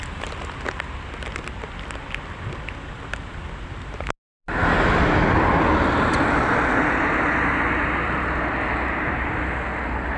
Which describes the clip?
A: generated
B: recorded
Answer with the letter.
B